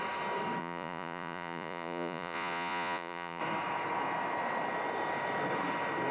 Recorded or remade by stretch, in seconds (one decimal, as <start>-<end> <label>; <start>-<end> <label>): 0.0-0.6 recorded; 0.6-3.4 remade; 3.4-6.1 recorded